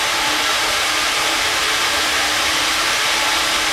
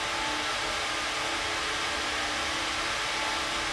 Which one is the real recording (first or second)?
second